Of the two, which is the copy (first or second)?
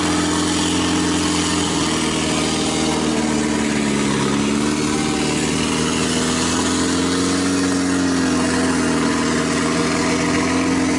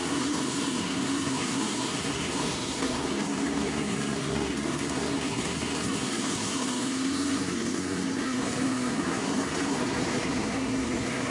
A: second